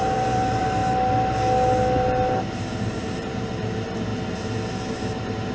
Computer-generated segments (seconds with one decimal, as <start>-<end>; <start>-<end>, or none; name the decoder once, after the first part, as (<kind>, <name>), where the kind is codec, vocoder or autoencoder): 0.0-0.8 (vocoder, BigVGAN v2); 2.8-4.1; 4.9-5.5